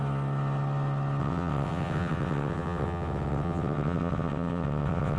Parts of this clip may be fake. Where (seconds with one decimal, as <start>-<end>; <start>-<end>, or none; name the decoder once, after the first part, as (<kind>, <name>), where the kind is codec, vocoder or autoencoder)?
1.2-5.2 (vocoder, WaveNeXt)